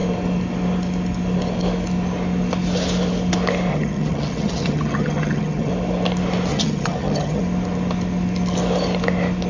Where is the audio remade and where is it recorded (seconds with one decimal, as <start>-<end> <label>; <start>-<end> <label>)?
0.0-3.7 recorded; 3.7-5.7 remade; 5.7-6.5 recorded; 6.5-7.4 remade; 7.4-9.5 recorded